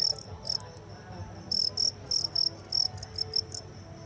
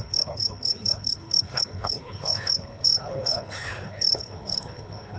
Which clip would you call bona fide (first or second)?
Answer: first